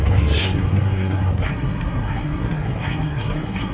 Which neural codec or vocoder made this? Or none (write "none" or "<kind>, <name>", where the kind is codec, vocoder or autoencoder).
codec, SNAC